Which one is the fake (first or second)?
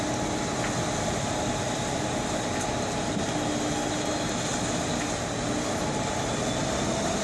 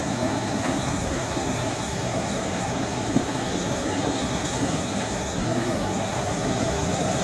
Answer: second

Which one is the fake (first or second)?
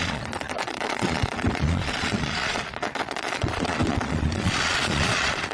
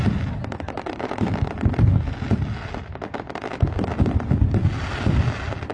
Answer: first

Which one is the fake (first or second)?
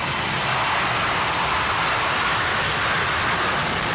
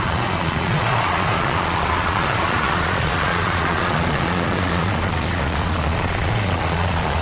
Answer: second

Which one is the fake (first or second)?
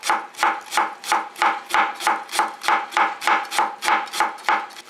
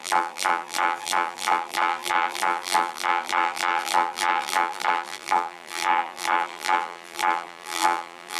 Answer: second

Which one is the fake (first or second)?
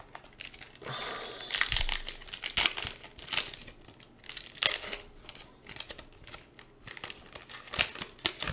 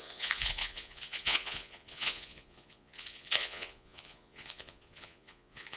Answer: second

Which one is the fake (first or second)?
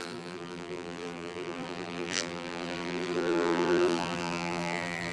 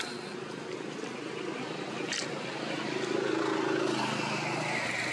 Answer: first